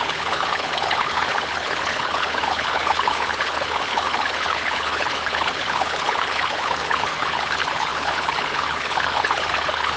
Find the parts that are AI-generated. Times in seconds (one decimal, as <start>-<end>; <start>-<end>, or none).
0.0-10.0